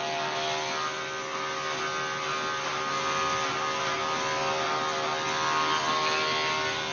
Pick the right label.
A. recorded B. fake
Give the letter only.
A